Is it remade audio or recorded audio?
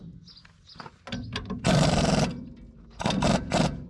recorded